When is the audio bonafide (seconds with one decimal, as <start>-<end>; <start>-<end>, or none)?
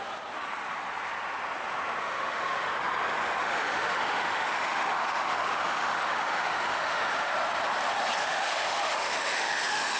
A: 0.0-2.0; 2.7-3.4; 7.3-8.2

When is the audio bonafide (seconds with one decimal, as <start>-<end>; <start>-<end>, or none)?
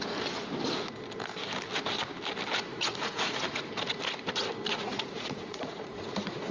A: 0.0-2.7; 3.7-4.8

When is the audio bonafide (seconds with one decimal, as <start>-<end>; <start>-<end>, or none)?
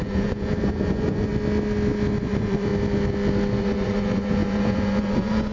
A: 1.3-2.2; 2.7-3.6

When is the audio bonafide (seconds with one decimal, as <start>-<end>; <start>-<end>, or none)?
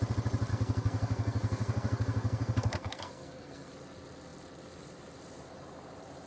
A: 0.0-0.5; 3.7-6.3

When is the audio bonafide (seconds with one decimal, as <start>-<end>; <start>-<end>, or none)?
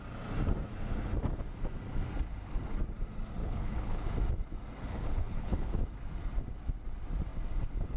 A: 0.0-3.4; 4.1-4.9; 5.8-8.0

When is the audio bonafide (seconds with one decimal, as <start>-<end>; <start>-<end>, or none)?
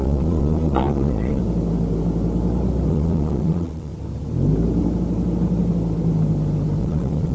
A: 1.4-2.9; 3.9-6.8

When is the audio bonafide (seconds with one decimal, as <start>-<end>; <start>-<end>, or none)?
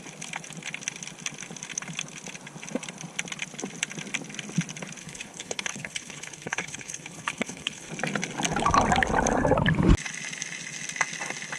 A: 0.0-5.0; 7.9-11.6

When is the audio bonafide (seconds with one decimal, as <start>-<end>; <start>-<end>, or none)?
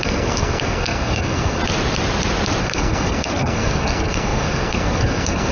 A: 1.6-2.6